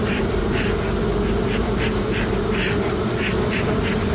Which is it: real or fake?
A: real